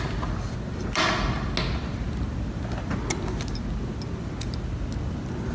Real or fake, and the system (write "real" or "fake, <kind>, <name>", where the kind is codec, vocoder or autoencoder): real